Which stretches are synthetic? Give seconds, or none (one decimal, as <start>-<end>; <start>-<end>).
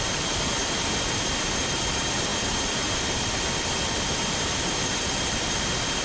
0.0-6.0